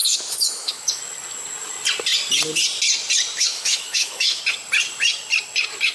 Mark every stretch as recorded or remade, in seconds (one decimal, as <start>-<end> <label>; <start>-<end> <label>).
0.0-1.0 remade; 1.0-3.5 recorded; 3.5-4.4 remade; 4.4-5.9 recorded